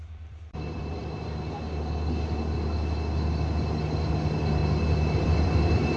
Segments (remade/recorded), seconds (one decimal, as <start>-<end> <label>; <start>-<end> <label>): 0.0-1.0 remade; 1.0-4.1 recorded; 4.1-4.6 remade; 4.6-5.2 recorded; 5.2-6.0 remade